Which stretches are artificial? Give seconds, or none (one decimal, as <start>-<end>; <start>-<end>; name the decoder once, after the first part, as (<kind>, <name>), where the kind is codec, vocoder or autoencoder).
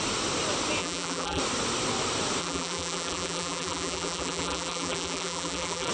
0.8-1.4 (vocoder, BigVGAN v2); 2.4-5.9